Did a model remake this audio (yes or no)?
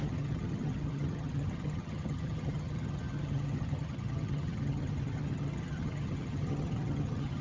yes